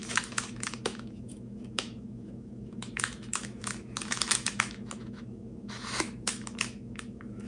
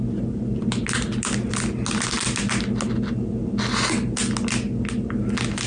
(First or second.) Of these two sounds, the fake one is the first